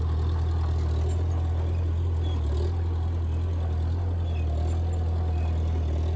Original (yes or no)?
yes